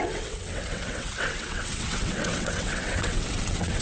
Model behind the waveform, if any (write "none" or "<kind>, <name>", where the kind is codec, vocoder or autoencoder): vocoder, WaveNeXt